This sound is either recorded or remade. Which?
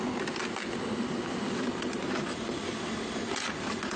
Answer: recorded